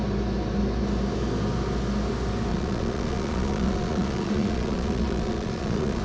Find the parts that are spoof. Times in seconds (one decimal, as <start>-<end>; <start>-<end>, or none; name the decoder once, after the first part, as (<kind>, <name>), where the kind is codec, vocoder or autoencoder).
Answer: 2.5-6.0 (vocoder, Vocos)